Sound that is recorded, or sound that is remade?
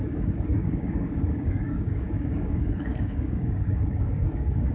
remade